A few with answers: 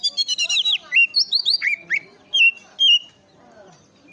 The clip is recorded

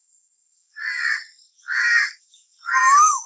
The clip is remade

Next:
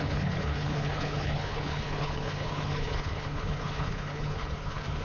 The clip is remade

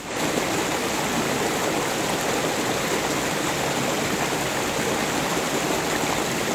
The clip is recorded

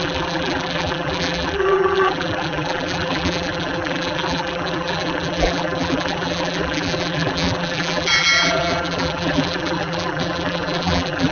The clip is remade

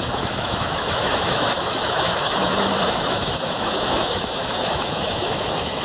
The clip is remade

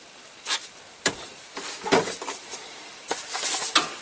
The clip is recorded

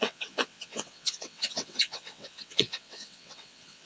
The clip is remade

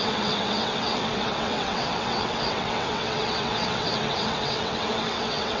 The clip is remade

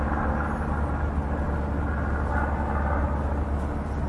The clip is recorded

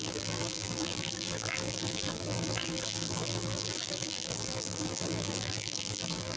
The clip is remade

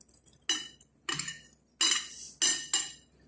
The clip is recorded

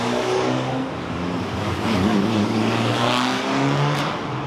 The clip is remade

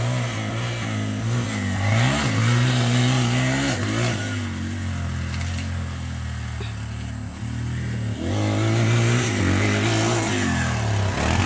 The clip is recorded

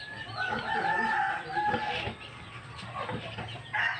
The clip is recorded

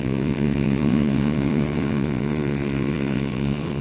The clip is remade